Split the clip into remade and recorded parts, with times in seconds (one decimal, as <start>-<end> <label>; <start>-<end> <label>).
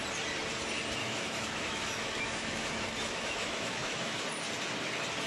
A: 0.0-1.0 recorded; 1.0-4.2 remade; 4.2-5.3 recorded